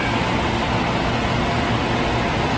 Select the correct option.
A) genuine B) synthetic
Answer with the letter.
A